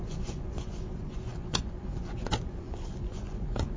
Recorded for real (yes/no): no